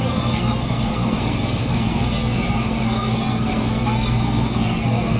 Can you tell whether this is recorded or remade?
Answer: remade